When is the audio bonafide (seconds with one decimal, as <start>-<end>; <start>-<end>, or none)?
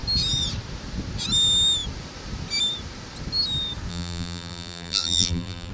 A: 0.0-3.9